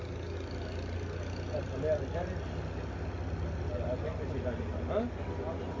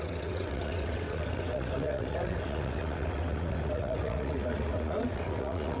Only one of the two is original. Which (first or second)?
first